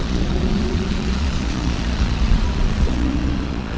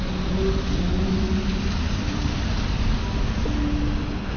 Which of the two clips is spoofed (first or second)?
first